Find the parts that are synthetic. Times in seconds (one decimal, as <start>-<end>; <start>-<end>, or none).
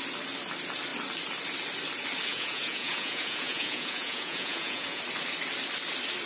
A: 2.3-5.0